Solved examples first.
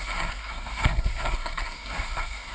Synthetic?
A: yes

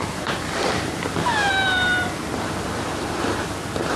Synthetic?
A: yes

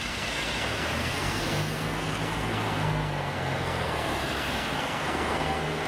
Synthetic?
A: yes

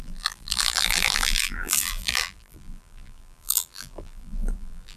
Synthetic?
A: yes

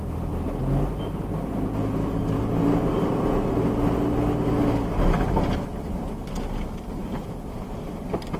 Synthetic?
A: no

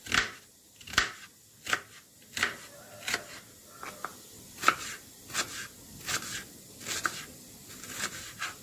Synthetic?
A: no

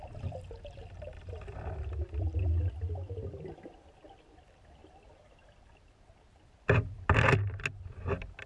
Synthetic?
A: no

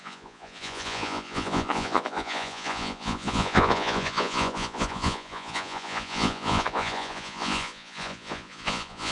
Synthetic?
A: yes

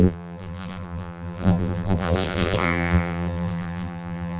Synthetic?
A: yes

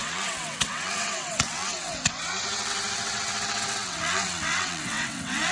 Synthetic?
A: yes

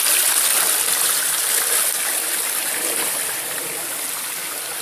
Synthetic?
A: no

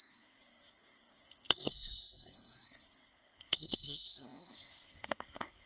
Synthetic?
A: yes